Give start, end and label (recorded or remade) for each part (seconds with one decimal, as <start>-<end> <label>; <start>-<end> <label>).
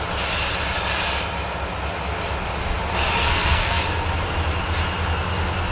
0.0-3.2 recorded; 3.2-3.8 remade; 3.8-5.7 recorded